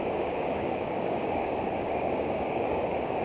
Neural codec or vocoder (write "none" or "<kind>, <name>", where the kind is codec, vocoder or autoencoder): codec, DAC